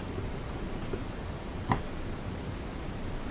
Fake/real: real